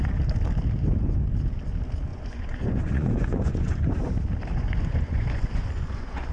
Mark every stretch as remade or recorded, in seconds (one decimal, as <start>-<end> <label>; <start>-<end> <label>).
0.0-2.1 recorded; 2.1-4.0 remade; 4.0-4.5 recorded; 4.5-6.3 remade